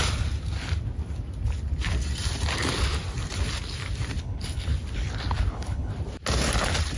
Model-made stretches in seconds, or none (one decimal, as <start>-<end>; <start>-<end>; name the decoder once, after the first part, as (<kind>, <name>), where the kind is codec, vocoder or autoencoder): 4.2-4.7 (codec, HILCodec); 5.5-5.9